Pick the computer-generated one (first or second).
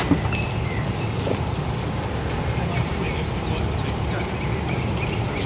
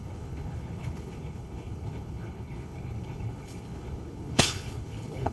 second